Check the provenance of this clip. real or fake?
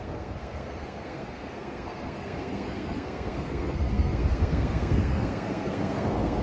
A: fake